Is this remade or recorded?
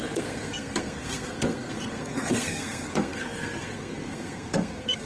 remade